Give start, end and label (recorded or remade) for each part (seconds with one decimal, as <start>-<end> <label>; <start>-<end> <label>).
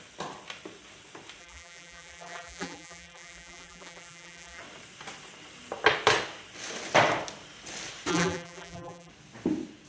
0.0-1.4 recorded; 1.4-4.6 remade; 4.6-8.1 recorded; 8.1-9.1 remade; 9.1-9.9 recorded